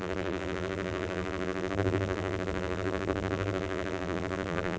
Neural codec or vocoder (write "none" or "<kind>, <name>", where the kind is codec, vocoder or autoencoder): vocoder, BigVGAN v2